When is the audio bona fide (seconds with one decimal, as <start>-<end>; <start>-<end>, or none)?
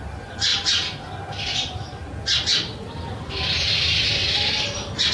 0.0-5.1